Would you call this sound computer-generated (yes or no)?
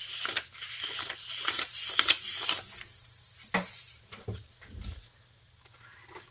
no